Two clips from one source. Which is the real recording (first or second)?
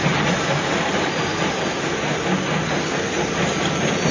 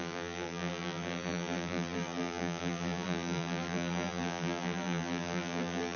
first